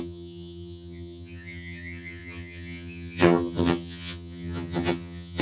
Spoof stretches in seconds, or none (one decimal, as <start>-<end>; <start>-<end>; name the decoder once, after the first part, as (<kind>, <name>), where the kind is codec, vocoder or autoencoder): 0.0-5.4 (vocoder, HiFi-GAN)